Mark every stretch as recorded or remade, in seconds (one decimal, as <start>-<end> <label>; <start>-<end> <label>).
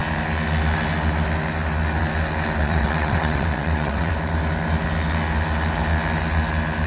0.0-2.6 recorded; 2.6-4.1 remade; 4.1-6.9 recorded